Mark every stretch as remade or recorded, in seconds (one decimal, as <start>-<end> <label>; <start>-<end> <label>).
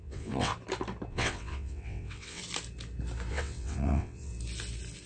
0.0-0.5 remade; 0.5-1.1 recorded; 1.1-2.4 remade; 2.4-3.3 recorded; 3.3-4.3 remade; 4.3-5.1 recorded